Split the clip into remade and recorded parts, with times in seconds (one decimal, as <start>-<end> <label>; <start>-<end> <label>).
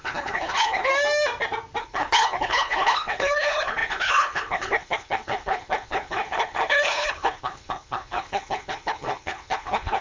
0.0-0.9 remade; 0.9-1.8 recorded; 1.8-10.0 remade